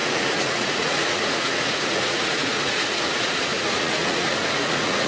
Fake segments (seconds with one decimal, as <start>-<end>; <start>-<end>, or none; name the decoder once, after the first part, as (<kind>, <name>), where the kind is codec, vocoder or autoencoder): 0.0-5.1 (vocoder, Vocos)